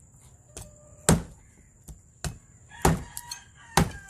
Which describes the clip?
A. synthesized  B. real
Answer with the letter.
B